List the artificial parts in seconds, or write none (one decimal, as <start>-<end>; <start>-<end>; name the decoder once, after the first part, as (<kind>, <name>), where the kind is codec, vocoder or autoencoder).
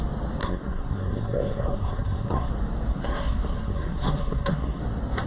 0.4-2.5 (codec, SNAC); 2.9-4.8